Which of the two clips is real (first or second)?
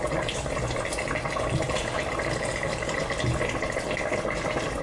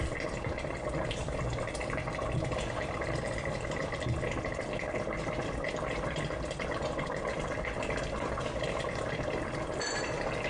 first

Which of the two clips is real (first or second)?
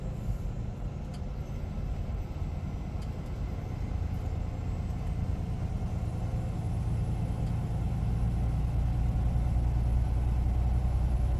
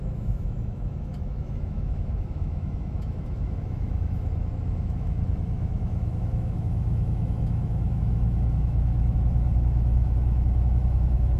first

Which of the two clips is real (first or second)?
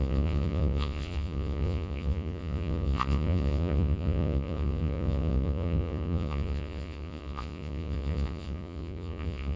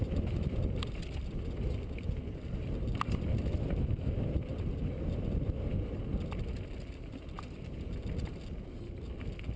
second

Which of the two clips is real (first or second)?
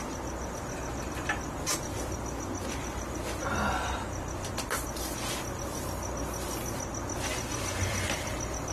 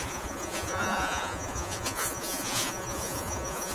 first